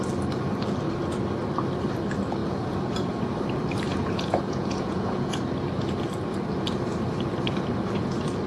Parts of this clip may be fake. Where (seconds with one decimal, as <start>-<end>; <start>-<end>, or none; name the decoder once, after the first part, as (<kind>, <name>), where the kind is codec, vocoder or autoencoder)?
2.4-3.2 (vocoder, Vocos); 3.9-5.4